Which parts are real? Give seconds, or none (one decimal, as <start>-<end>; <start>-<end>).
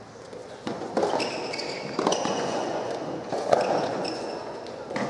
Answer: 0.0-0.4; 0.9-2.1